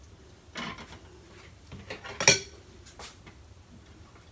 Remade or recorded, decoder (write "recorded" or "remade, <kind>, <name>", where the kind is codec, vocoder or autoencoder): recorded